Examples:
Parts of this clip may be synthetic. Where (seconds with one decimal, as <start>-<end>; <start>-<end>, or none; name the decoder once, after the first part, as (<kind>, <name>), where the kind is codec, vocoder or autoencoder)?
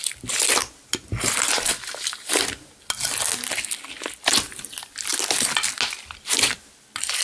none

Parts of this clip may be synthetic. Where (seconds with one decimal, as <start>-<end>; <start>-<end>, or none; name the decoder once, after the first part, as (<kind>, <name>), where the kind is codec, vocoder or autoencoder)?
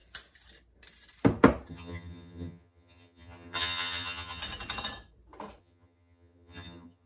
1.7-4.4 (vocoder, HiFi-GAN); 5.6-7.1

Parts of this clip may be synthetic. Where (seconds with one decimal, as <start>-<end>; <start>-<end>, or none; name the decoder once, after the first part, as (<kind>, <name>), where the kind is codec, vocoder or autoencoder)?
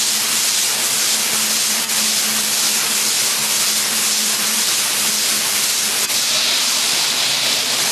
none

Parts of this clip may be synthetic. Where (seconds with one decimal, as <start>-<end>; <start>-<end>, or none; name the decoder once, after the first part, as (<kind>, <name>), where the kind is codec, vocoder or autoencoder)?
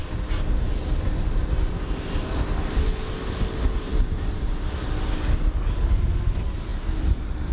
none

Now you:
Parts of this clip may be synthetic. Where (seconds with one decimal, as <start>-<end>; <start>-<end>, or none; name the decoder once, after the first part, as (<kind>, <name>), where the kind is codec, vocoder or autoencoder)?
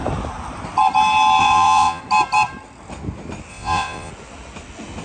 1.4-2.0 (vocoder, Vocos); 3.5-4.1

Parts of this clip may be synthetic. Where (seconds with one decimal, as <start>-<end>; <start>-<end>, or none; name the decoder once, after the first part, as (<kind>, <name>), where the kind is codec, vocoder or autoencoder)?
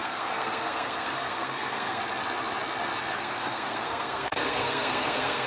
0.0-2.0 (codec, SNAC); 3.1-5.5